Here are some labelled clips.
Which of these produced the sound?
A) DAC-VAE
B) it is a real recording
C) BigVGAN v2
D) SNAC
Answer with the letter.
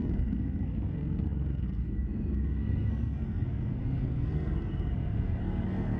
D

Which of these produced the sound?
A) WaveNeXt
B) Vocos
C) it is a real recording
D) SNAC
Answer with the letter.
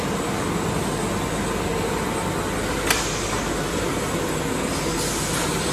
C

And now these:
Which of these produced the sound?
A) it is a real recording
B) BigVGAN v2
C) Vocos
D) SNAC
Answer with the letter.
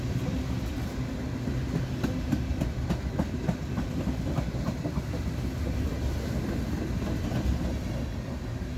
A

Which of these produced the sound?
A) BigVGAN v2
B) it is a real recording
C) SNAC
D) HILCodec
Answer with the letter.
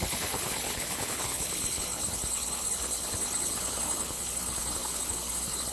D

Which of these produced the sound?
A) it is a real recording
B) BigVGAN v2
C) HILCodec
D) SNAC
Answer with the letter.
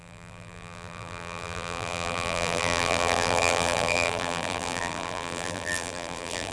B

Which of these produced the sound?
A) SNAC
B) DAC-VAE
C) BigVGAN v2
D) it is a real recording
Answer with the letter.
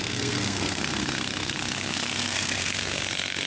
A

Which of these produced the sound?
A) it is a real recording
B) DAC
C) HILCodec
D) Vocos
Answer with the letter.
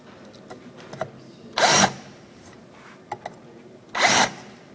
A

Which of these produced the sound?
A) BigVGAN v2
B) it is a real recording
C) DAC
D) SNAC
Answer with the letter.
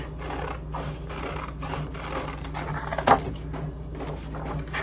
B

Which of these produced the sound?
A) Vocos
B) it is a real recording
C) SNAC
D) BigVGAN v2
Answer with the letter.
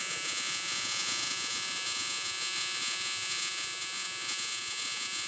A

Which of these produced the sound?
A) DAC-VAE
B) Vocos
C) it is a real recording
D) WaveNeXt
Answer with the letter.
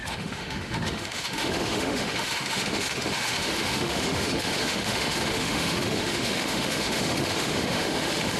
A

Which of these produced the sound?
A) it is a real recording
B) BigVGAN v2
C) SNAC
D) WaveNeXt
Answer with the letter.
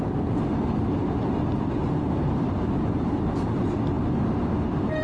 A